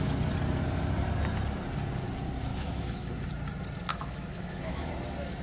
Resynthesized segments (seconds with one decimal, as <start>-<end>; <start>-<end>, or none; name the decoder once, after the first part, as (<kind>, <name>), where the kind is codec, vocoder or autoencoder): 2.5-3.1 (autoencoder, DAC-VAE); 3.9-4.9